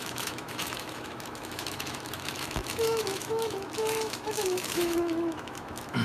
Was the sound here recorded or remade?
remade